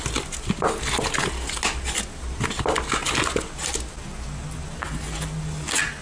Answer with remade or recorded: recorded